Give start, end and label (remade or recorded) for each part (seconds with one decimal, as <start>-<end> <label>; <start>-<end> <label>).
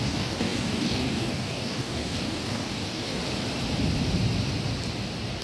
0.0-3.2 remade; 3.2-5.4 recorded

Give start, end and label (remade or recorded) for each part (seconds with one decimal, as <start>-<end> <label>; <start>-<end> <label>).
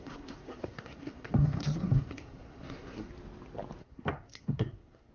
0.0-3.1 remade; 3.1-3.8 recorded; 3.8-5.1 remade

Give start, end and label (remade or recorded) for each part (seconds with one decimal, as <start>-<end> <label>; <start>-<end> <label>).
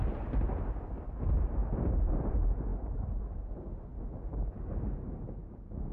0.0-2.7 recorded; 2.7-3.2 remade; 3.2-3.9 recorded; 3.9-4.5 remade; 4.5-5.9 recorded